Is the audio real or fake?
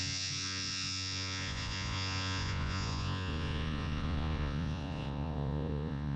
fake